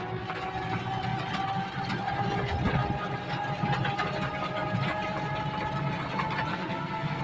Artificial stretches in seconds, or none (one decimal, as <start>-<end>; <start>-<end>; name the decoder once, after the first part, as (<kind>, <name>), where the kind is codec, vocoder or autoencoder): 6.5-7.2 (codec, SNAC)

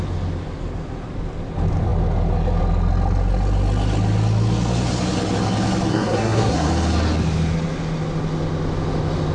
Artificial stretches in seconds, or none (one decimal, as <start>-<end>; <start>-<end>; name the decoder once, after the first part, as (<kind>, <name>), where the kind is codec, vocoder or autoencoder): 5.9-6.7 (codec, SNAC)

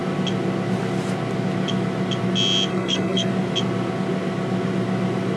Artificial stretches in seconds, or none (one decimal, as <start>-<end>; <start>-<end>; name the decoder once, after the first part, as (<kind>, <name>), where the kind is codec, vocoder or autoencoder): 2.7-3.3 (codec, SNAC)

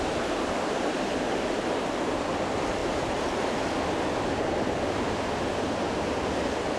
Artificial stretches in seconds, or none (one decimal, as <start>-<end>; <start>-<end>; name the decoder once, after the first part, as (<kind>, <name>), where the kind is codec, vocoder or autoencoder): none

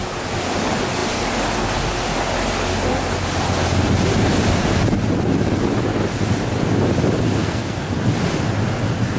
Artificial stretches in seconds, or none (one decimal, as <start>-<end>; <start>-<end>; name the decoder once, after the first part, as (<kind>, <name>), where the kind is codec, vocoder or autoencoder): 7.4-7.9 (codec, SNAC)

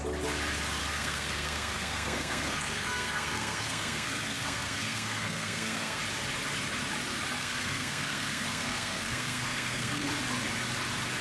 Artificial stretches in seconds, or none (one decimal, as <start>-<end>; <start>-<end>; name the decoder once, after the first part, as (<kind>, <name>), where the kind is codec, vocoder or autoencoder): 0.8-6.0 (codec, SNAC); 7.4-10.1

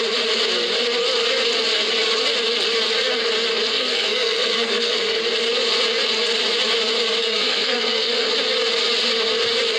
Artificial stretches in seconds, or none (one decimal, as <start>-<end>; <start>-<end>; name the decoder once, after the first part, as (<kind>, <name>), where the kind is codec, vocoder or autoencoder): 3.7-5.2 (codec, SNAC); 7.2-8.3